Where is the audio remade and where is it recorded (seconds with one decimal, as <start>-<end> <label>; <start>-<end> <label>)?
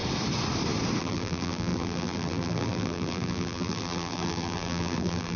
0.0-1.0 recorded; 1.0-5.4 remade